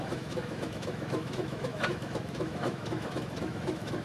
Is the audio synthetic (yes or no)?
yes